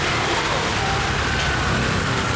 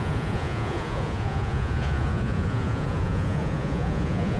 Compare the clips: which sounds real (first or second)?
first